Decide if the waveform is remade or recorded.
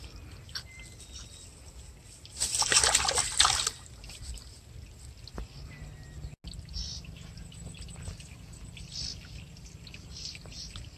recorded